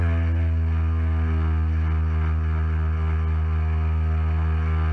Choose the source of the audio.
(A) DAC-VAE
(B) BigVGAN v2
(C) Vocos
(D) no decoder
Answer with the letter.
D